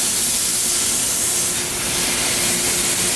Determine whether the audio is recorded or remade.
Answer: recorded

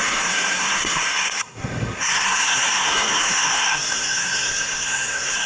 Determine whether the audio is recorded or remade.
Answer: remade